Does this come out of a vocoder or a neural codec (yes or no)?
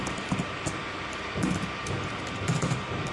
no